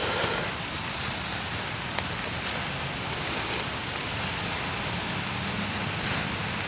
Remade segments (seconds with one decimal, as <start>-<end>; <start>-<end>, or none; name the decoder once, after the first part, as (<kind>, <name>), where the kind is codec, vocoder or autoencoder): none